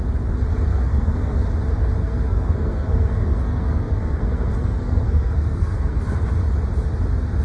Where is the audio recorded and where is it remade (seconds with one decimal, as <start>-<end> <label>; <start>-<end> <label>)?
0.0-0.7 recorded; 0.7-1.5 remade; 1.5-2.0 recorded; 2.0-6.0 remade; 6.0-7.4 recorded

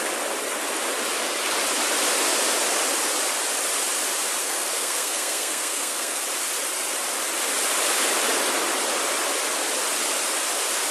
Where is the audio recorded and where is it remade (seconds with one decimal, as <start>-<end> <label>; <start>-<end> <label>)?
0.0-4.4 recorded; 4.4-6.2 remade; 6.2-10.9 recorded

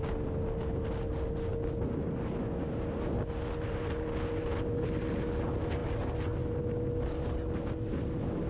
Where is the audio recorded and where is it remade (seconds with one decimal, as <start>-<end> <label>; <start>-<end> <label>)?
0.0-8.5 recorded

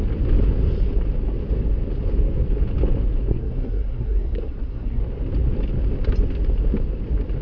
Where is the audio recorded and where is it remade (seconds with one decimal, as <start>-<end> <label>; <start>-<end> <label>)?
0.0-3.3 recorded; 3.3-5.0 remade; 5.0-7.4 recorded